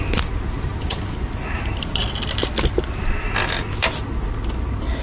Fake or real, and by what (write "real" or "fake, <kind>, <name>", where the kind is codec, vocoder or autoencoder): real